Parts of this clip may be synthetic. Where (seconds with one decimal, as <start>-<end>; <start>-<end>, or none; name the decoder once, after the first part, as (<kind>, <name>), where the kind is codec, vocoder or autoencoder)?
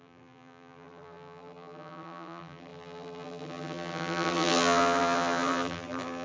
0.0-6.2 (vocoder, BigVGAN v2)